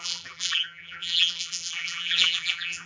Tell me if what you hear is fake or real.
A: fake